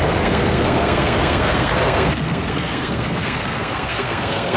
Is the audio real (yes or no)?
no